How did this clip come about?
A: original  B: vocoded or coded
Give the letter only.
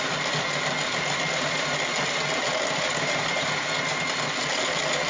A